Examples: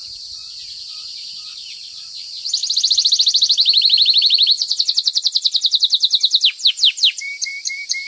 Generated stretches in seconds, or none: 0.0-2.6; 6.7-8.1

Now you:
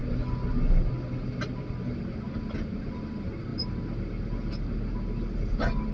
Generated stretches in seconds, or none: none

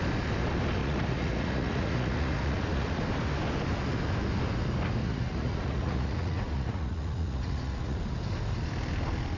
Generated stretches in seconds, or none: 0.8-3.0; 5.0-8.0

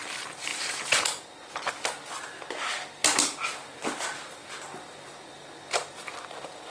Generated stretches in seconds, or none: none

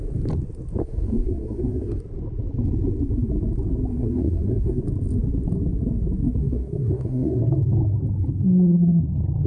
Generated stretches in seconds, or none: 0.8-2.0; 3.9-4.8; 6.4-7.4

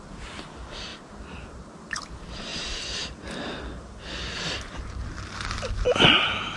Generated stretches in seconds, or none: none